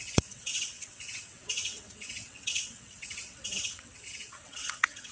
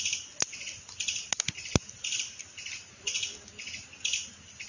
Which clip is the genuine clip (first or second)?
second